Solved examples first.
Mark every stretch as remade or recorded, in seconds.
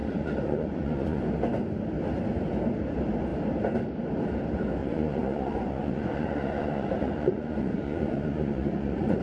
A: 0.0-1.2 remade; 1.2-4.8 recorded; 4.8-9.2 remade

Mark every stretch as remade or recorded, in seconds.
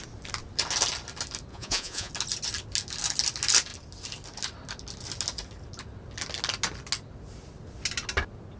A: 0.0-1.5 recorded; 1.5-2.1 remade; 2.1-8.6 recorded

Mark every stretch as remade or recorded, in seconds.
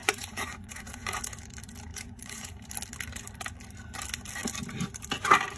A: 0.0-1.2 remade; 1.2-1.9 recorded; 1.9-2.5 remade; 2.5-5.6 recorded